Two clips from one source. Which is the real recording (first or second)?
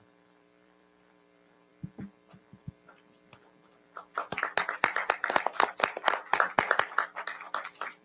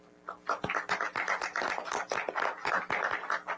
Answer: second